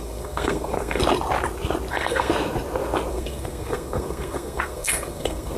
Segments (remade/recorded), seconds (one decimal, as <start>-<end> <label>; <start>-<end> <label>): 0.0-1.0 remade; 1.0-1.9 recorded; 1.9-2.3 remade; 2.3-3.1 recorded; 3.1-5.6 remade